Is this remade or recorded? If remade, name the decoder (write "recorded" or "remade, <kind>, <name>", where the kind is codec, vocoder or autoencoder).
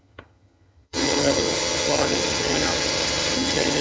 remade, vocoder, HiFi-GAN